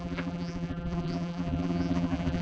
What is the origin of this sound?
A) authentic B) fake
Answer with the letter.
B